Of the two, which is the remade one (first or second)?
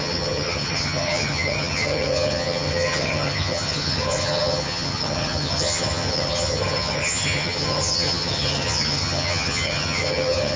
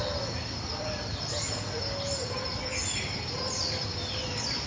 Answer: first